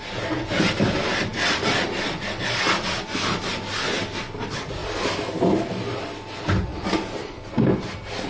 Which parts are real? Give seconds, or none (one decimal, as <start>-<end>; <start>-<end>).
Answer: 0.0-8.3